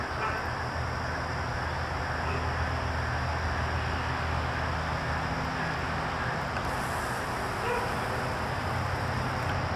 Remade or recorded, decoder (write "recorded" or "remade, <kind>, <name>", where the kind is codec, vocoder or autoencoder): recorded